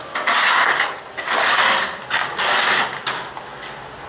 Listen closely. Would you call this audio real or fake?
real